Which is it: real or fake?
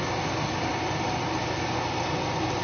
real